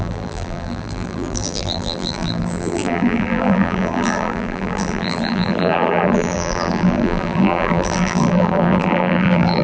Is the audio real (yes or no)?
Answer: no